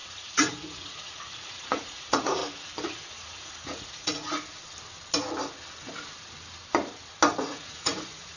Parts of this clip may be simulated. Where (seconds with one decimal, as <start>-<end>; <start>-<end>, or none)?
0.0-2.4; 3.1-4.2; 7.4-8.4